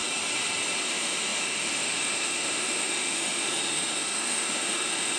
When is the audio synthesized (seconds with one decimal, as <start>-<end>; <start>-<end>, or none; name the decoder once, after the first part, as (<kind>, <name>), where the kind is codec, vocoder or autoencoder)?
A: 0.8-5.2 (autoencoder, DAC-VAE)